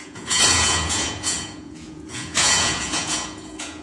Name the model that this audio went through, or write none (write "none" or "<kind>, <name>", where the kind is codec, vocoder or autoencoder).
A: vocoder, Vocos